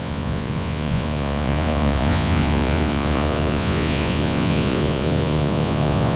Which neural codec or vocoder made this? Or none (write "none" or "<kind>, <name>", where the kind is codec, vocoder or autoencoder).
vocoder, Vocos